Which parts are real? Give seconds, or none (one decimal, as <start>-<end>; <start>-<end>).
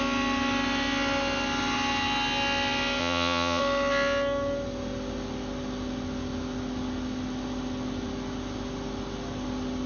0.0-3.0; 3.6-9.9